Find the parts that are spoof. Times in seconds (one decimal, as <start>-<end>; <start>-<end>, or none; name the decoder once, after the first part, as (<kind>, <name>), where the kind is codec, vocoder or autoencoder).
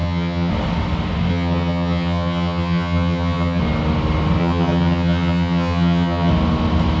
0.0-0.5 (vocoder, HiFi-GAN); 1.3-3.6; 4.4-6.3